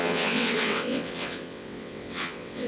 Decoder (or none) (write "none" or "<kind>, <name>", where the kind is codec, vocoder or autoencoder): vocoder, WaveNeXt